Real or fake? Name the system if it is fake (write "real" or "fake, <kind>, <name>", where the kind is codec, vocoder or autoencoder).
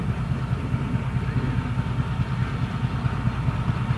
real